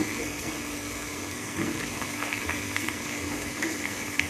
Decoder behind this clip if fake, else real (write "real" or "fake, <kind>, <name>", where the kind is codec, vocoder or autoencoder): fake, codec, SNAC